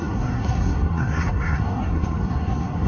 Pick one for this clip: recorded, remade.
remade